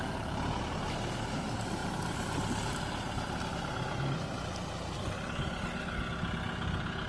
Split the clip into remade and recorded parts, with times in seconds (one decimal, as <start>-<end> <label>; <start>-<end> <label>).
0.0-7.1 recorded